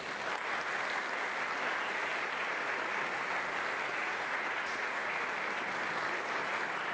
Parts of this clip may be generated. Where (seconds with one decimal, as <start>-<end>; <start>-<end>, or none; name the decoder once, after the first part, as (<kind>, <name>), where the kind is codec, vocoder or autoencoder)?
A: 3.9-5.2 (vocoder, Vocos)